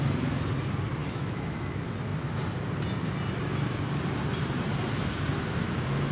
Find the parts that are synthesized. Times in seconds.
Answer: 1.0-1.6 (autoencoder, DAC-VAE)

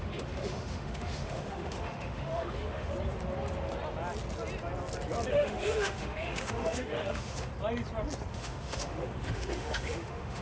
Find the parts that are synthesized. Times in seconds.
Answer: 0.0-2.9 (autoencoder, DAC-VAE); 5.3-7.5; 8.3-10.4

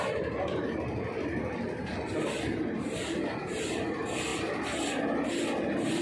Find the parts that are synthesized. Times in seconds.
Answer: none

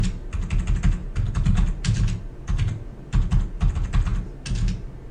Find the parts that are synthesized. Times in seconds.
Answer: none

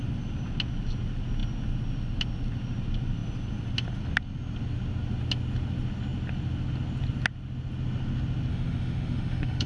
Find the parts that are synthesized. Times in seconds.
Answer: 8.5-9.7 (autoencoder, DAC-VAE)